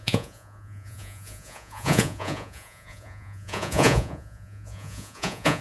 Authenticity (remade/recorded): remade